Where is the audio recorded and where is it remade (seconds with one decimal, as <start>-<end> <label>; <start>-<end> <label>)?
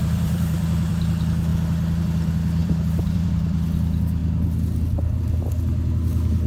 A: 0.0-0.9 remade; 0.9-2.6 recorded; 2.6-3.3 remade; 3.3-6.5 recorded